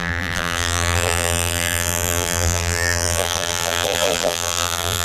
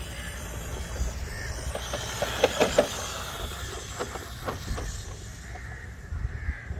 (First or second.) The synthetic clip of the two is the first